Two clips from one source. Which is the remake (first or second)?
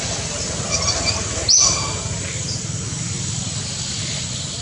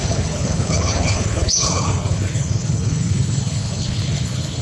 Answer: second